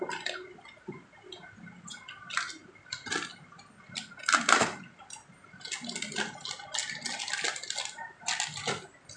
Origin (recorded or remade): recorded